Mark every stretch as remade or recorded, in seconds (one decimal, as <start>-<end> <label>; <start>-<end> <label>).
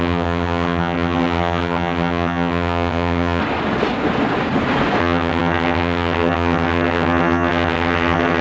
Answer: 0.0-3.4 remade; 3.4-5.0 recorded; 5.0-8.4 remade